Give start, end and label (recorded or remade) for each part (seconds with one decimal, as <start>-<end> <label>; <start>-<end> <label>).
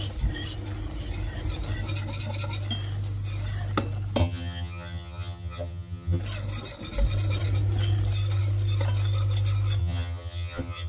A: 0.0-4.2 recorded; 4.2-6.2 remade; 6.2-9.8 recorded; 9.8-10.9 remade